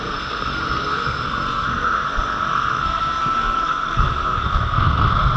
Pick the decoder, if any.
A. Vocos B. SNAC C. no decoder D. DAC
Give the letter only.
B